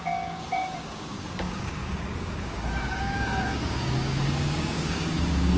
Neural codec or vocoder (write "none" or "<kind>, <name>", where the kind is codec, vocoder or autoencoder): codec, DAC